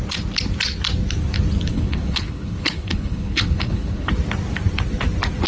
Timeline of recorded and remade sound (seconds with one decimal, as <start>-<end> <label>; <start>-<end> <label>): 0.0-1.7 recorded; 1.7-4.1 remade; 4.1-5.5 recorded